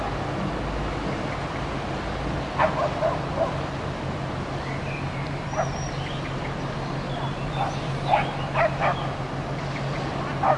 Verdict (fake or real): real